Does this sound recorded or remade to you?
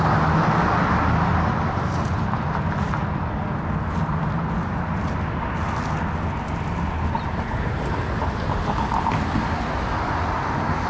recorded